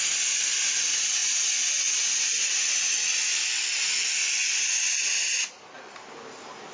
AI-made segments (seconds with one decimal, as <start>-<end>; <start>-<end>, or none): none